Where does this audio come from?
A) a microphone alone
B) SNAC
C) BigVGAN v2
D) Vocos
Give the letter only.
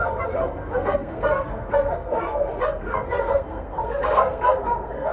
B